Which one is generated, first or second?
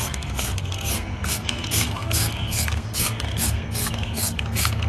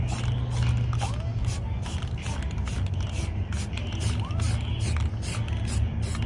first